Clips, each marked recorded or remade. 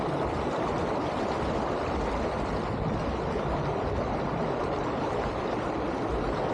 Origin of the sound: recorded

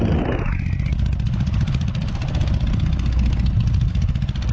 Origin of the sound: recorded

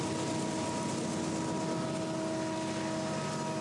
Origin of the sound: recorded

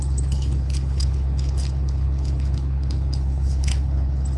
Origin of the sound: remade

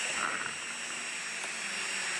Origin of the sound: recorded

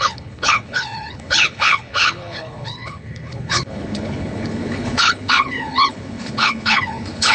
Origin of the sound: remade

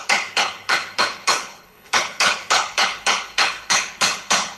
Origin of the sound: remade